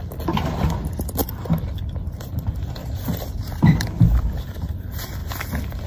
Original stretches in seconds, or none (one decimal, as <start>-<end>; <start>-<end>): 0.0-1.2; 4.7-5.9